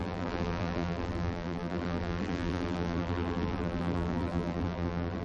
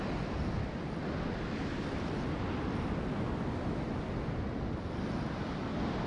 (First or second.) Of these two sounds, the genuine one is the second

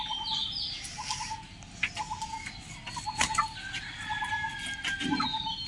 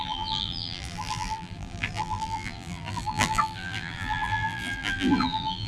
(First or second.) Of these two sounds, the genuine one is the first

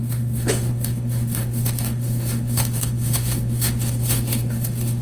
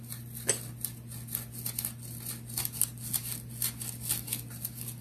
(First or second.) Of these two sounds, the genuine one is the second